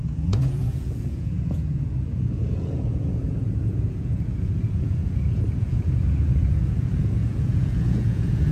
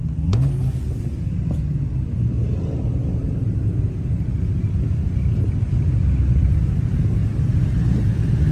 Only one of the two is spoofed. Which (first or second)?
first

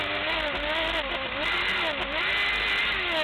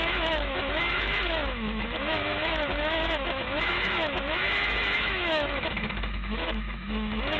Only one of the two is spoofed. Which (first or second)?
second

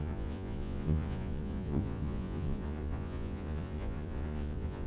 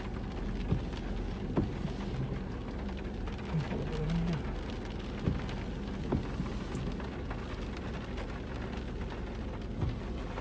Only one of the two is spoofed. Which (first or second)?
first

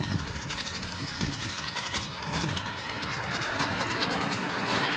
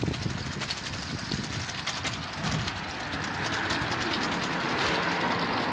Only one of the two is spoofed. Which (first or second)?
first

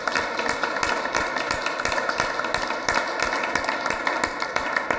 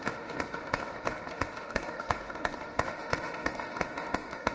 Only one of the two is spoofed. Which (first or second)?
second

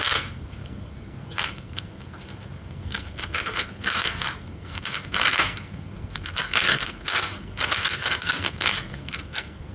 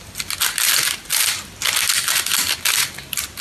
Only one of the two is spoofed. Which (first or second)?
first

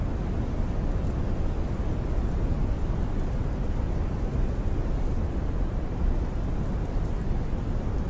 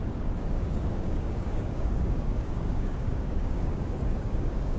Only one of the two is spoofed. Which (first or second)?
second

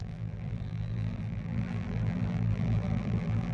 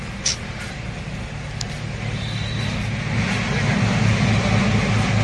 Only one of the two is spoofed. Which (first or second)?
first